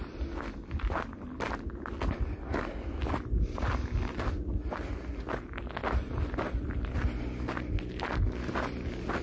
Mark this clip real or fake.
real